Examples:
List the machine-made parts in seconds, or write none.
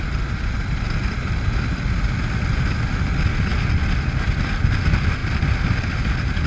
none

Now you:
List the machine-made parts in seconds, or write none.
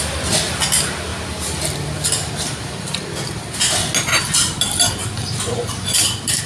none